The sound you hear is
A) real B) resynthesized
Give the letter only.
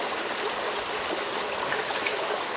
A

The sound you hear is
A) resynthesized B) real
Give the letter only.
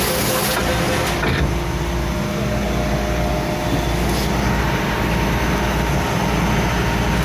B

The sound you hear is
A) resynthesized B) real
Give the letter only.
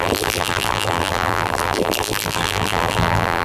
A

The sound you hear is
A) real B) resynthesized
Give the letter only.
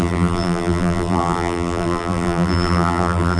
B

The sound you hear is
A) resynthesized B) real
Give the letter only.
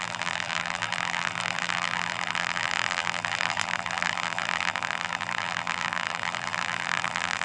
A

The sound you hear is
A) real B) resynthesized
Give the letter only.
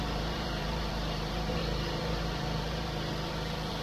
B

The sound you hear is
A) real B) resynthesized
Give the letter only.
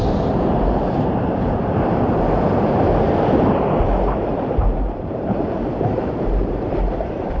B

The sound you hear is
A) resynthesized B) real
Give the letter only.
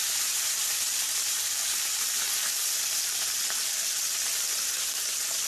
B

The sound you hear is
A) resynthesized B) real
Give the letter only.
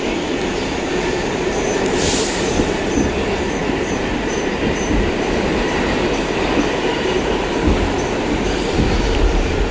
A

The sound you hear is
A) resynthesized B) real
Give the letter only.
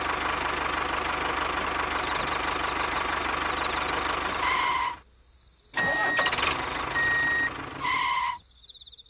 B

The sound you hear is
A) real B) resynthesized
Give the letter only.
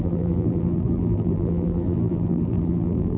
B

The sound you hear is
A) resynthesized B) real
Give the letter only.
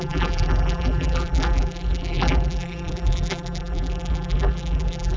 A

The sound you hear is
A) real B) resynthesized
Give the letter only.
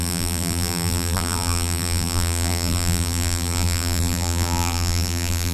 B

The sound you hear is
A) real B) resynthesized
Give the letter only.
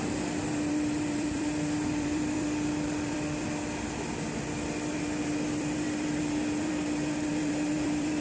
B